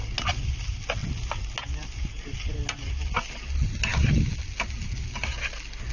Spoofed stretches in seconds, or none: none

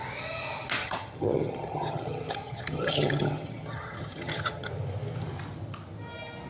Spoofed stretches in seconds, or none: 0.8-4.7 (vocoder, HiFi-GAN)

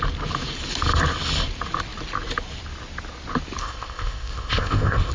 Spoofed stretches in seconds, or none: 3.6-5.1 (codec, ZipCodec)

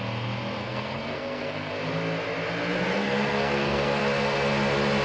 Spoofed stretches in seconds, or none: 0.6-1.7 (codec, SNAC); 2.9-4.0

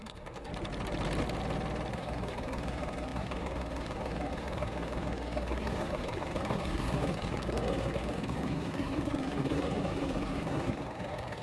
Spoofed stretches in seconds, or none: 0.0-0.5 (codec, SNAC); 1.9-11.4

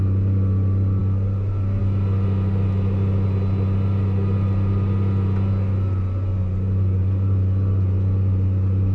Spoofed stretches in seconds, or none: none

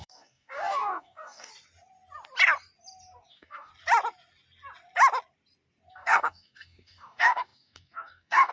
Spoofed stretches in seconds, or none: 0.0-1.5 (codec, DAC); 3.3-3.7; 5.9-8.5